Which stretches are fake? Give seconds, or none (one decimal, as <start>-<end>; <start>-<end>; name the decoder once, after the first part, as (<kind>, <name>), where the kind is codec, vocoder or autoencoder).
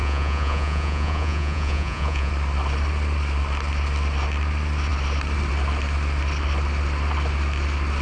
0.0-2.3 (vocoder, Vocos)